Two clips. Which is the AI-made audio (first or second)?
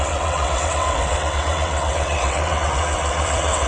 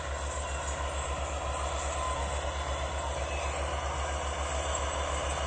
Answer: first